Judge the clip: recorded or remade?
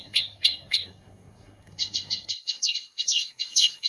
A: remade